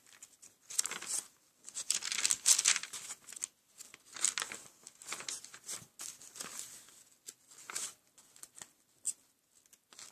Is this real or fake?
real